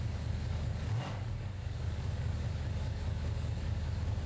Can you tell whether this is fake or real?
fake